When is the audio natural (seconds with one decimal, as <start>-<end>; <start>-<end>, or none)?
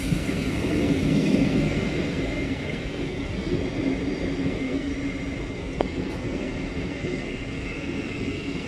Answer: 3.6-4.4; 4.9-5.5